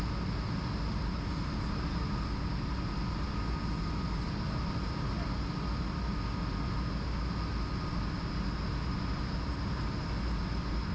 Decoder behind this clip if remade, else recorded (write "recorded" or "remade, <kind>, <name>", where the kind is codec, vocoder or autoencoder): recorded